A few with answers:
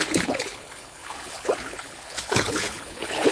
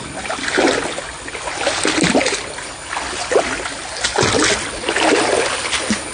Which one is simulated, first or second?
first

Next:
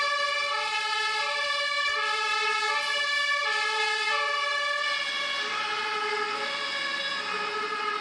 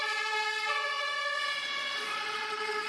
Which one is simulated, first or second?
second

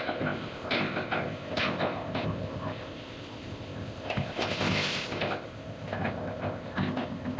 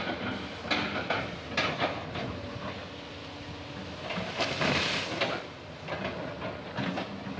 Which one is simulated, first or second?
first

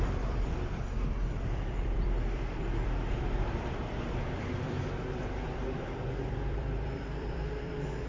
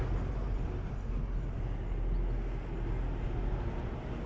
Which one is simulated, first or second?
first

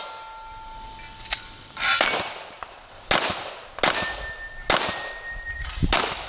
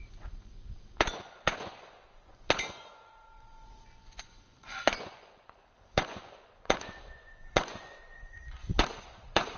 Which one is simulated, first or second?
second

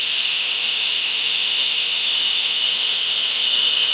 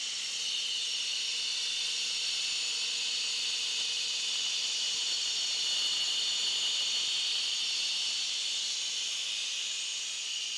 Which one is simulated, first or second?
first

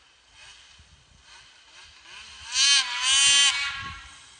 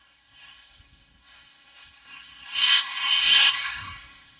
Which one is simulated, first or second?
second